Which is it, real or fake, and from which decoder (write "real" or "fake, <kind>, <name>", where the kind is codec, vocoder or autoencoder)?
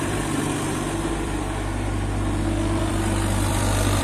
fake, vocoder, BigVGAN v2